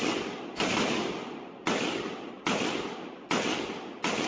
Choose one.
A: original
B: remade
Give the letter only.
A